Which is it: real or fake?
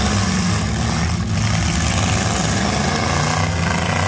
real